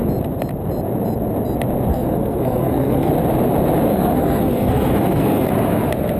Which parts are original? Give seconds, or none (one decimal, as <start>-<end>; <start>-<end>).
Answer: 0.0-1.9; 3.1-3.9; 5.5-6.2